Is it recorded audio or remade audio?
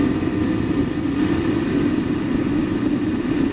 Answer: remade